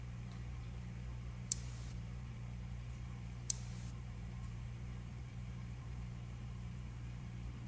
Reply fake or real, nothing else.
fake